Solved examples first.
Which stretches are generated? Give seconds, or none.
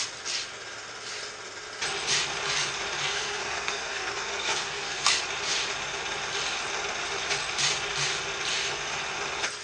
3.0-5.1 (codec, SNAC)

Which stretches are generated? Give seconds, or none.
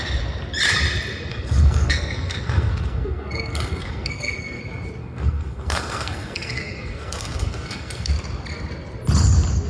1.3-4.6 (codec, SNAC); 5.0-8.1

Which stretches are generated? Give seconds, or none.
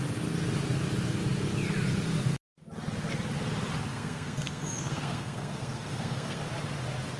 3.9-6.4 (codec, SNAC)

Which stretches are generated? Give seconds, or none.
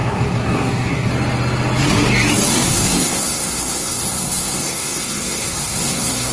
0.0-1.1 (codec, SNAC); 2.5-6.3